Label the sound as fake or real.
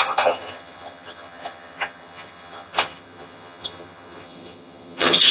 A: fake